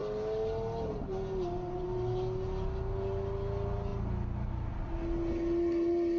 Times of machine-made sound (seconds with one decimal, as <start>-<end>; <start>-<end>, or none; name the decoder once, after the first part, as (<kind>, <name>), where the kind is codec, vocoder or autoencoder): none